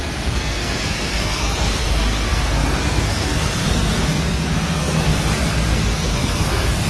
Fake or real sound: fake